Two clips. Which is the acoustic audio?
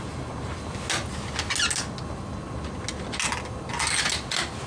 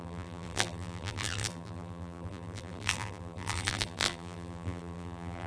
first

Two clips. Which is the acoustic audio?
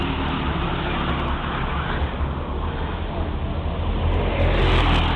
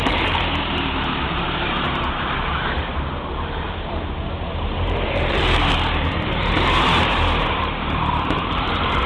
first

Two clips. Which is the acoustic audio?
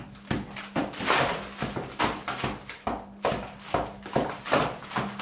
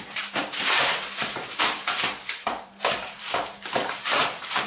first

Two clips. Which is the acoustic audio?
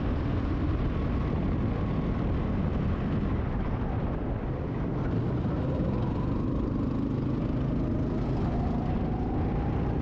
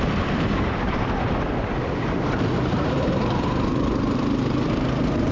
first